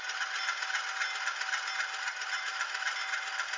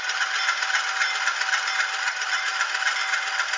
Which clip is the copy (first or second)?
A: second